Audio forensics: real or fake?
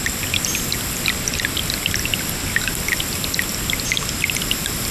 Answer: real